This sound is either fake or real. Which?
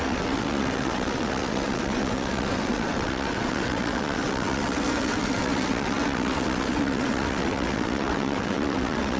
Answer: fake